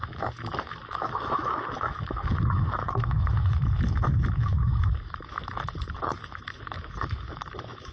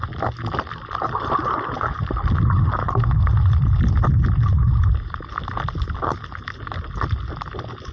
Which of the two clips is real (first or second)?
second